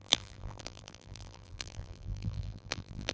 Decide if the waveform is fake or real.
fake